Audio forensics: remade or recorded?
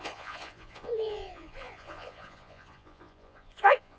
remade